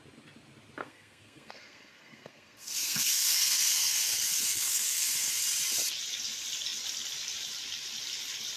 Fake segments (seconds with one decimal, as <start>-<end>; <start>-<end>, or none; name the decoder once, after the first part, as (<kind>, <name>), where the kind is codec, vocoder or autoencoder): 0.8-5.3 (codec, SNAC)

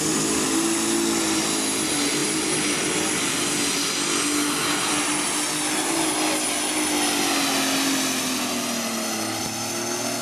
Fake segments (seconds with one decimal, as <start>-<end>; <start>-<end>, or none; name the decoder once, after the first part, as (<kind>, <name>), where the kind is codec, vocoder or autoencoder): none

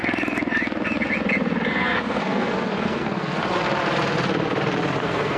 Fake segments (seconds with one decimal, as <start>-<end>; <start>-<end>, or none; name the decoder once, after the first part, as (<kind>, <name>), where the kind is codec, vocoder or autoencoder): 1.7-3.4 (codec, SNAC); 5.0-5.4